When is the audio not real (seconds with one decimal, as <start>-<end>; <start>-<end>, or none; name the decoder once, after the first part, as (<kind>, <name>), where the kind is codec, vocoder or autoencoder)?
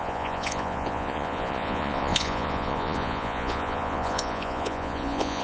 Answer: 0.0-5.4 (vocoder, Vocos)